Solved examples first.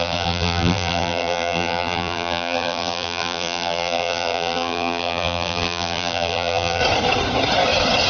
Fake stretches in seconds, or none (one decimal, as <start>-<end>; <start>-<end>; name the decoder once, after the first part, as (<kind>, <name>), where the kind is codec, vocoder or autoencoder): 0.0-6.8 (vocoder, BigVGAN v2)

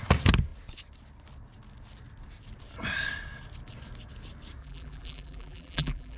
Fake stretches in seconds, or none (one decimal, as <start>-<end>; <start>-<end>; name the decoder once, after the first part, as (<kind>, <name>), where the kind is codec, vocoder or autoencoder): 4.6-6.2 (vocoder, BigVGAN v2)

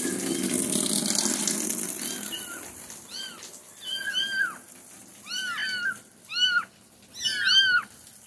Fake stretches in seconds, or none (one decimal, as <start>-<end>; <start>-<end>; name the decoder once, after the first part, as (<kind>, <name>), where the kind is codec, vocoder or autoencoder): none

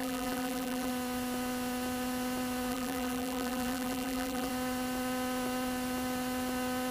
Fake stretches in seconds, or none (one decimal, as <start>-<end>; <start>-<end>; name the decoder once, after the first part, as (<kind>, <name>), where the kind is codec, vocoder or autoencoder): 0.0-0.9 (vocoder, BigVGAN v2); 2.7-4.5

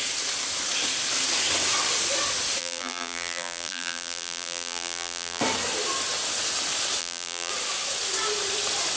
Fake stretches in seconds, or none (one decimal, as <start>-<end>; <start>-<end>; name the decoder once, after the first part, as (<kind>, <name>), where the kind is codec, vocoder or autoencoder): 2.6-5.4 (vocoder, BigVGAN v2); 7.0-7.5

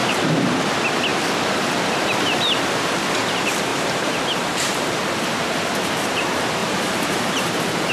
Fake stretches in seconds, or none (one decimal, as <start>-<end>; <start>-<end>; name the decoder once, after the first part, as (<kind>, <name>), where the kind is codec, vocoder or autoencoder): 0.0-0.7 (vocoder, BigVGAN v2); 3.7-5.1; 6.6-7.9

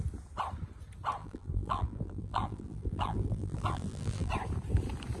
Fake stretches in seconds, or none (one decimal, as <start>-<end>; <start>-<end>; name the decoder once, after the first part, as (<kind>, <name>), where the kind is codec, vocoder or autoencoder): 1.2-4.3 (vocoder, BigVGAN v2)

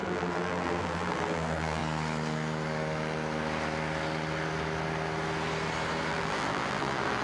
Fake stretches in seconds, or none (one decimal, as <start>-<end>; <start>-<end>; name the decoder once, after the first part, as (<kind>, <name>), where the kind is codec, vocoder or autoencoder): 0.0-1.8 (vocoder, BigVGAN v2); 6.1-7.2